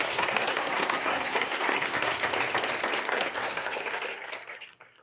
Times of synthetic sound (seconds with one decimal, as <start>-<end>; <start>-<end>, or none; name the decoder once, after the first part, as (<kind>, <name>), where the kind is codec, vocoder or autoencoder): 0.0-2.3 (codec, SNAC); 3.0-5.0